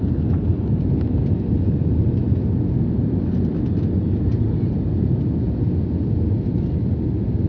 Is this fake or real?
real